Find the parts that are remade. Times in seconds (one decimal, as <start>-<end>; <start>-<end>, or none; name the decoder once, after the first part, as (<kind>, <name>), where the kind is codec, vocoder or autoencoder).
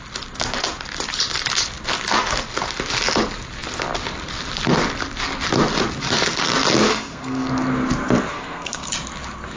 6.9-7.5 (codec, SNAC); 8.3-8.9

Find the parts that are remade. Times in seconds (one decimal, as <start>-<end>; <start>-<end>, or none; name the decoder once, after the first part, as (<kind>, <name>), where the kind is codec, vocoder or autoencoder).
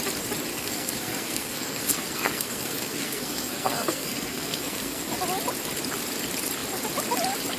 0.5-5.1 (codec, SNAC)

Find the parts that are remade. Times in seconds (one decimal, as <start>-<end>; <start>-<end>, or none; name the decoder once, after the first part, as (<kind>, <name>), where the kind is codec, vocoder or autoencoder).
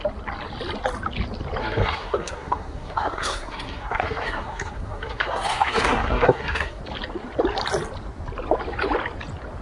1.6-6.8 (codec, SNAC)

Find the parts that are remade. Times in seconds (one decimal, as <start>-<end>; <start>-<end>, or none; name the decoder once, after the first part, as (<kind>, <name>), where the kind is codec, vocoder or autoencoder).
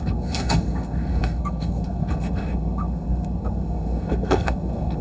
0.0-5.0 (codec, SNAC)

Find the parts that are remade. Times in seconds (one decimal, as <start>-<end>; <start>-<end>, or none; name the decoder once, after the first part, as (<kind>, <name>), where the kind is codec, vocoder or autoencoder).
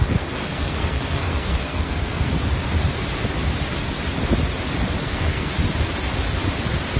0.0-2.3 (codec, SNAC); 5.0-5.5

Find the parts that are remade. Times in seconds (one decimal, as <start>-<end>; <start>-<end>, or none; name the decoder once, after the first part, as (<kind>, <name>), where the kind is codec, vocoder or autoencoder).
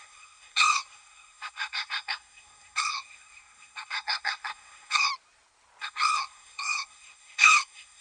0.0-5.1 (codec, SNAC); 5.8-8.0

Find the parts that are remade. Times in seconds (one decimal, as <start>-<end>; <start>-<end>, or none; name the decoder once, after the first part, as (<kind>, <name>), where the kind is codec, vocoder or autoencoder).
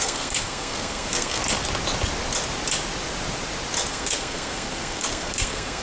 0.0-1.4 (codec, SNAC); 3.9-5.8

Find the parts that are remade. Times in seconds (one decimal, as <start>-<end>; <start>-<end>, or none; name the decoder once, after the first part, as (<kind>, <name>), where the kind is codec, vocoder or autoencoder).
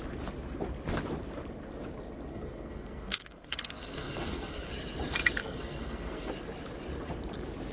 2.3-4.7 (codec, SNAC); 5.4-6.3